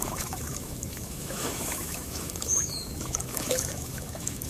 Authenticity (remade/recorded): remade